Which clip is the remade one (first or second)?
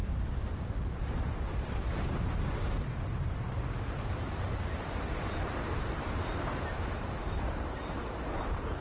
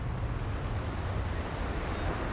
first